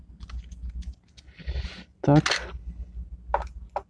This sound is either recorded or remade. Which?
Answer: recorded